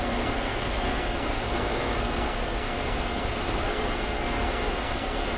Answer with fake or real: fake